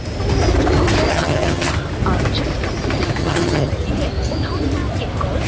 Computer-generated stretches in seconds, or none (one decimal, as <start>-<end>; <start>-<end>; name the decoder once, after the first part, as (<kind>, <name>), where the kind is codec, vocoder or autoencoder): 1.1-1.7 (vocoder, HiFi-GAN); 3.2-3.7

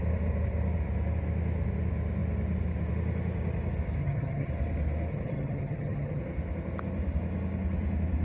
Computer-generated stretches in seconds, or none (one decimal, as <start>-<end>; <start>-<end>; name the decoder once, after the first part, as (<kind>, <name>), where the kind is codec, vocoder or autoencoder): 4.0-4.5 (vocoder, HiFi-GAN); 5.1-6.2

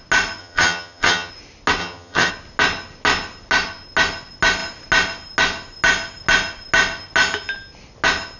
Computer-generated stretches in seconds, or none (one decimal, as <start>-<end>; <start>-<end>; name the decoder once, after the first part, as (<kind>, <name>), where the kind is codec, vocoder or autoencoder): 0.4-1.3 (vocoder, HiFi-GAN); 1.8-2.3

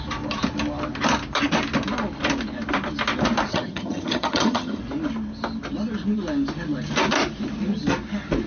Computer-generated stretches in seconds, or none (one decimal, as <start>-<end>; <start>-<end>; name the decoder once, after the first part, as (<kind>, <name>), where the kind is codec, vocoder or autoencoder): 3.5-4.8 (vocoder, HiFi-GAN)

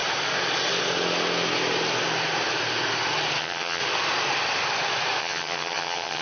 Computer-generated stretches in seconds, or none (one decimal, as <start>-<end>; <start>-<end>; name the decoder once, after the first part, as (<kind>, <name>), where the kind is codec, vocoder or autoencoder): 3.4-3.8 (vocoder, HiFi-GAN); 5.2-6.2

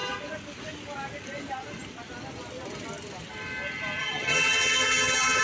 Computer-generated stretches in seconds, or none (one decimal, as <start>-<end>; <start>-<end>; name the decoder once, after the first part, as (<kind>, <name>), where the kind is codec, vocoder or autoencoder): 4.0-5.4 (vocoder, HiFi-GAN)

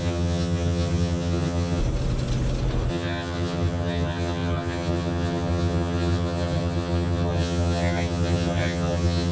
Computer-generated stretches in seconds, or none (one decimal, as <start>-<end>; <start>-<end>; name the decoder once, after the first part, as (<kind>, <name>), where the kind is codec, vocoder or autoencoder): 0.0-1.8 (vocoder, HiFi-GAN); 2.9-9.3